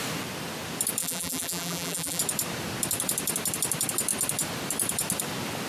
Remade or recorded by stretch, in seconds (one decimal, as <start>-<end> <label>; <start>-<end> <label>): 0.0-1.0 recorded; 1.0-2.2 remade; 2.2-5.7 recorded

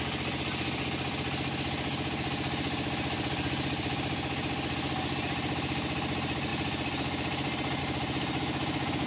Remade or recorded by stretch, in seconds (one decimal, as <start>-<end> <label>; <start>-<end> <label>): 0.0-9.1 recorded

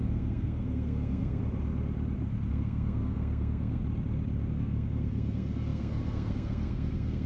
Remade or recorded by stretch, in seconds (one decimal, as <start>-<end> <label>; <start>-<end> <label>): 0.0-1.4 remade; 1.4-2.5 recorded; 2.5-3.8 remade; 3.8-4.5 recorded; 4.5-7.3 remade

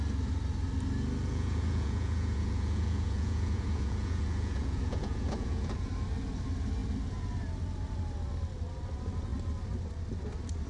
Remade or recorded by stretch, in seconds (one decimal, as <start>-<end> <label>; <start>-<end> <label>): 0.0-1.2 recorded; 1.2-5.9 remade; 5.9-10.7 recorded

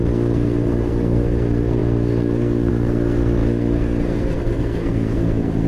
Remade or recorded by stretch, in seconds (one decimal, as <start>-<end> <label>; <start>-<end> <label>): 0.0-5.7 remade

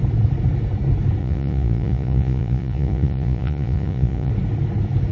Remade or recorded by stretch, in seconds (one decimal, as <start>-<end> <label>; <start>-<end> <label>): 0.0-1.2 recorded; 1.2-4.3 remade; 4.3-5.1 recorded

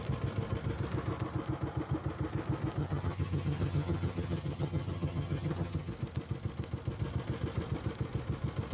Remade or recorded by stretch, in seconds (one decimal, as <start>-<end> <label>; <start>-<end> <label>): 0.0-2.8 recorded; 2.8-5.9 remade; 5.9-8.7 recorded